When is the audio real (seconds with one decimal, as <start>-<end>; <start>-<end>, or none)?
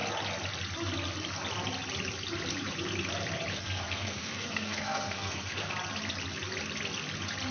0.0-3.5; 5.7-7.5